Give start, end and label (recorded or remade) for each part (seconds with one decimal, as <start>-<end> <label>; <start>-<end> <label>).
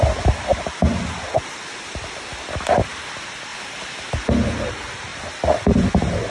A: 0.0-6.3 recorded